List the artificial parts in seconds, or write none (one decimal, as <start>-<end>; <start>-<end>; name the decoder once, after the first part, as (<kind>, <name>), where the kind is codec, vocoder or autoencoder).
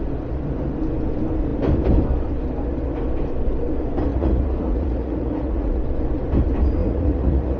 4.1-5.8 (vocoder, Vocos); 6.8-7.6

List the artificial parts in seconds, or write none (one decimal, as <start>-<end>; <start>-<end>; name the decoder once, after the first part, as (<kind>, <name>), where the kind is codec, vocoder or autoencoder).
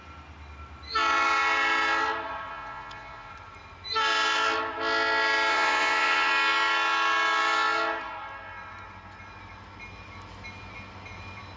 2.5-3.3 (vocoder, Vocos); 5.5-6.3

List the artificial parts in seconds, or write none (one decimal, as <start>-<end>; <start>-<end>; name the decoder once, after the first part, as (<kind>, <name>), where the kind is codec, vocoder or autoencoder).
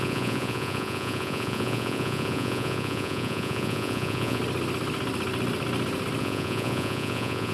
0.0-4.4 (vocoder, Vocos); 6.2-7.5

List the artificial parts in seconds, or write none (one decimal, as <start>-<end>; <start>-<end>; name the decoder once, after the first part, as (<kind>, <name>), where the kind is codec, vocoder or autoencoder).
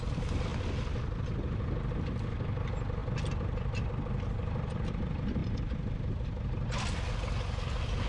none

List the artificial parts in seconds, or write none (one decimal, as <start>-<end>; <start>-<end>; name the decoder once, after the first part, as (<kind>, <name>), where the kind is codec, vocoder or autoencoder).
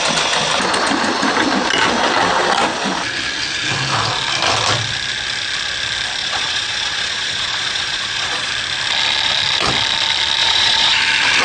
6.2-8.5 (vocoder, Vocos); 10.4-11.0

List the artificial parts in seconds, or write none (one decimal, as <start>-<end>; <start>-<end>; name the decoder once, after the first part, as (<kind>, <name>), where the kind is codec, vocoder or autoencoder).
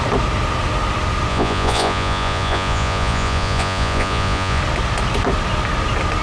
1.3-4.6 (vocoder, Vocos)